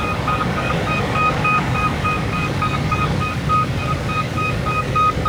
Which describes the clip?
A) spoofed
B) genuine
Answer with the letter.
A